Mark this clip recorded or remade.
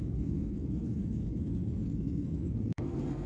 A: remade